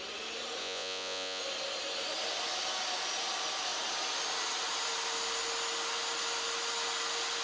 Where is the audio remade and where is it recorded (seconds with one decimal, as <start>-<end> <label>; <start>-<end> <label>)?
0.0-0.6 recorded; 0.6-1.4 remade; 1.4-7.4 recorded